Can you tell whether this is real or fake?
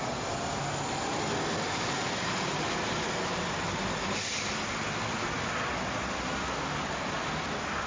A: real